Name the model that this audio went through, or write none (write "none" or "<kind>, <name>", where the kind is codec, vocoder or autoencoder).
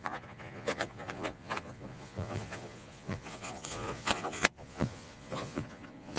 vocoder, Vocos